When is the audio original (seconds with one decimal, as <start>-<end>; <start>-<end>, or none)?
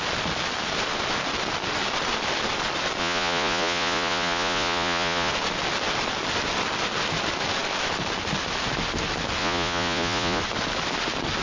0.0-3.0; 5.3-9.4; 10.4-11.4